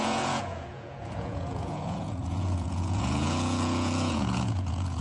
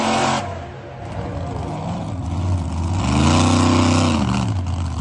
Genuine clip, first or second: second